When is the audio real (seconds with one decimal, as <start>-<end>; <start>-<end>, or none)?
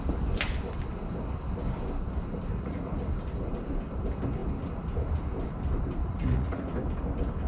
0.0-2.5; 3.1-6.0; 6.8-7.5